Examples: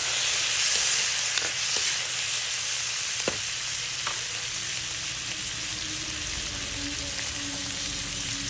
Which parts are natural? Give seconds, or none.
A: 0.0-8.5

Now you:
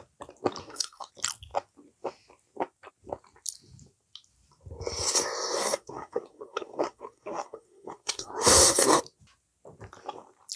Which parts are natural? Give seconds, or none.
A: 0.0-0.6; 1.1-5.6; 9.0-10.6

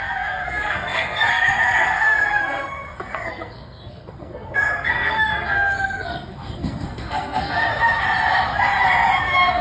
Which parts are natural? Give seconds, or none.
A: 7.7-9.2

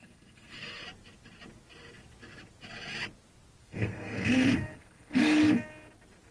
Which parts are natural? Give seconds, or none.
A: 0.8-3.6; 5.4-6.3

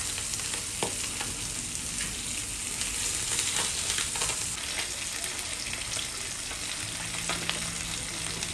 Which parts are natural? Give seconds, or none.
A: 0.0-8.5

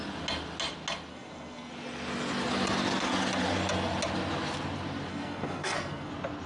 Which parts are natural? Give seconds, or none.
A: 0.0-1.1; 1.7-5.1; 6.1-6.5